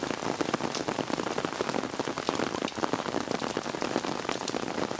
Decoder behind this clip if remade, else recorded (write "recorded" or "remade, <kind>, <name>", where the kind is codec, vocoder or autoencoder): remade, vocoder, BigVGAN v2